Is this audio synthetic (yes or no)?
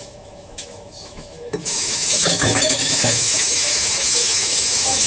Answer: yes